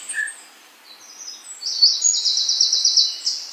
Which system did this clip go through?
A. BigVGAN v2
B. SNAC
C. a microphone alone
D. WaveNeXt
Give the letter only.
C